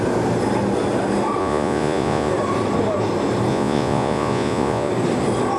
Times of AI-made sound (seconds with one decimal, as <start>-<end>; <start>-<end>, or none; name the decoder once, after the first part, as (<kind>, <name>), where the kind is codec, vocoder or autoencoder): 1.4-2.3 (vocoder, Vocos); 3.5-4.9